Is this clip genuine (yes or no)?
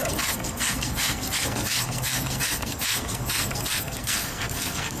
no